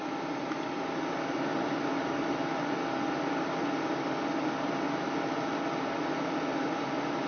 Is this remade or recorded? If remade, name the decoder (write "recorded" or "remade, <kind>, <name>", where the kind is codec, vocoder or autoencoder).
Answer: recorded